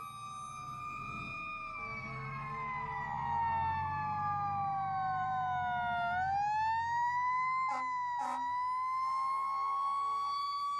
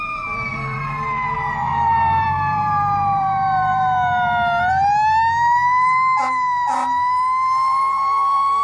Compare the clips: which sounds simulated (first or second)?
second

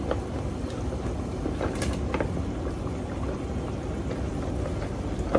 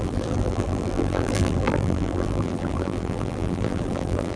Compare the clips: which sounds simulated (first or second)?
second